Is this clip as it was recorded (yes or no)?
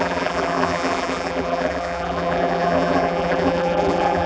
no